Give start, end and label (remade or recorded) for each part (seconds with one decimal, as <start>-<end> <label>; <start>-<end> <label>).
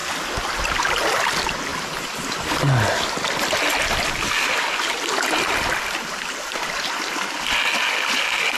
0.0-8.6 recorded